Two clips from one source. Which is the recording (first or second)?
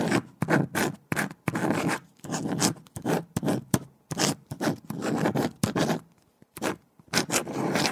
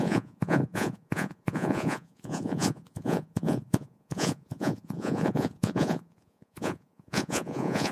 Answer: first